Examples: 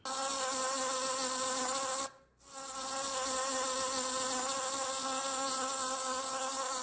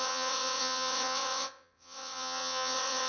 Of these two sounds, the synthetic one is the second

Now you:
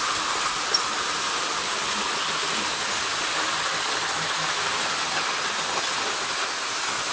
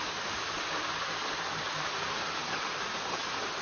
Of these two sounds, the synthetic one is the second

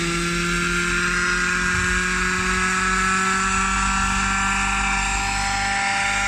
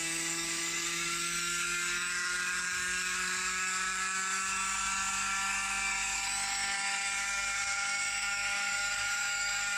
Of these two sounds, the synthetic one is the second